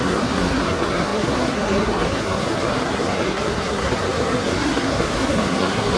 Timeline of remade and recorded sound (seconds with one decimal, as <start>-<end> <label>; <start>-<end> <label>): 0.0-6.0 remade